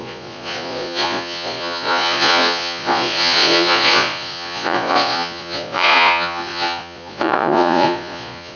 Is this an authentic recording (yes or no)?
no